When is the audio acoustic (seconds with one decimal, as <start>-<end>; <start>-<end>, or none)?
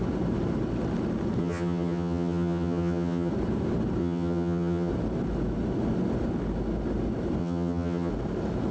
0.0-1.4; 3.3-4.0; 4.9-7.4; 8.1-8.7